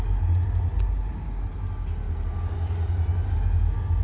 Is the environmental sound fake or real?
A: real